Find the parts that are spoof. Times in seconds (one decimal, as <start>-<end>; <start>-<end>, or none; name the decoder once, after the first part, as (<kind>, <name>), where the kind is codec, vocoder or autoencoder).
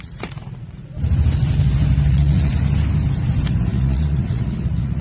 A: 0.0-0.9 (vocoder, Vocos); 2.1-2.5; 3.5-5.0